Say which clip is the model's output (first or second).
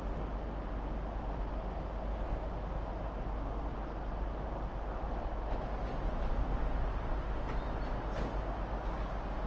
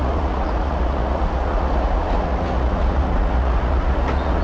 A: second